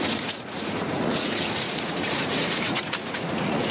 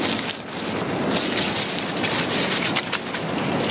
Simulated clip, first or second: first